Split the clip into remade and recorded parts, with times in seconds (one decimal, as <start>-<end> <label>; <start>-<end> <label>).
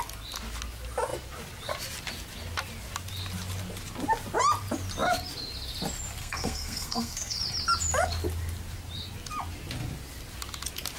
0.0-6.2 recorded; 6.2-7.4 remade; 7.4-11.0 recorded